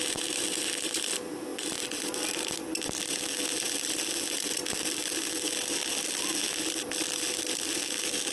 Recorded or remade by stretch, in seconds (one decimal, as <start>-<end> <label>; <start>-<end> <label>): 0.0-8.3 recorded